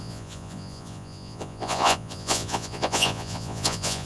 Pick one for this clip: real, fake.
fake